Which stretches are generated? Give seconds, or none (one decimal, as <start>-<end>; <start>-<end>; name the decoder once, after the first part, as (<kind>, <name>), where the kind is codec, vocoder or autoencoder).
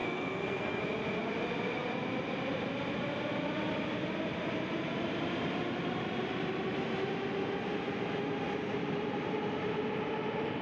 0.0-0.8 (codec, SNAC)